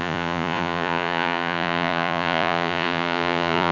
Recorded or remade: remade